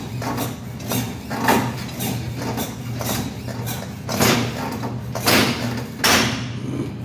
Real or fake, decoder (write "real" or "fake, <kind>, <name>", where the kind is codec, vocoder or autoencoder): real